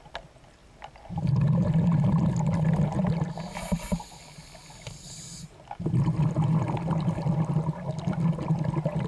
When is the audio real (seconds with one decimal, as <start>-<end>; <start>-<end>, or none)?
0.0-9.1